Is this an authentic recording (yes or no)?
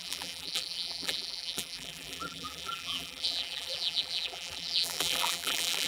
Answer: no